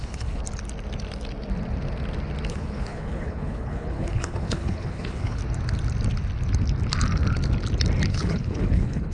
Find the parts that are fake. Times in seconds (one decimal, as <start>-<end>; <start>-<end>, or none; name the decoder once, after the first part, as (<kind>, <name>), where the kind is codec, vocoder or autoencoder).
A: 0.0-0.4 (codec, HILCodec); 2.5-5.4; 8.1-9.1